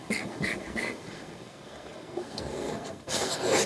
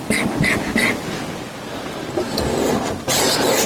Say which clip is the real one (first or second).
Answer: second